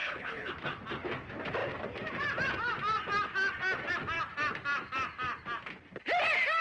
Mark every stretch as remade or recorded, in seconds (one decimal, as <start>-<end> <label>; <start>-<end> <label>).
0.0-0.5 remade; 0.5-6.6 recorded